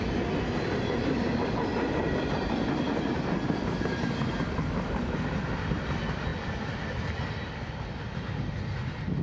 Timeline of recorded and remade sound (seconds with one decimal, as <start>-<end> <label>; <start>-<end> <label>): 0.0-9.2 recorded